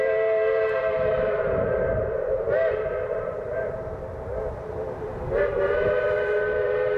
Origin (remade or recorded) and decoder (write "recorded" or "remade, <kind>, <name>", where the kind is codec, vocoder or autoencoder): remade, vocoder, BigVGAN v2